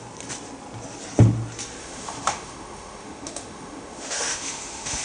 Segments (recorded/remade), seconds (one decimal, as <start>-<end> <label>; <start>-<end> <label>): 0.0-1.8 recorded; 1.8-5.0 remade